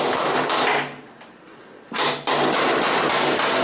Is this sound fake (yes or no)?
no